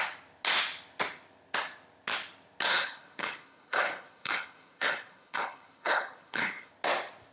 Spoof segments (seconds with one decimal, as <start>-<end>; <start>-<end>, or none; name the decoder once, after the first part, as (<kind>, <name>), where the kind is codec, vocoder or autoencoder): 2.7-6.7 (codec, HILCodec)